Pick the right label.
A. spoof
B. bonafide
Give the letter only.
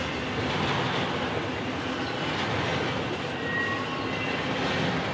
B